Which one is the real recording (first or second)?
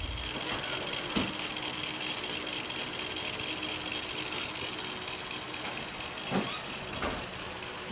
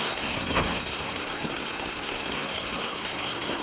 first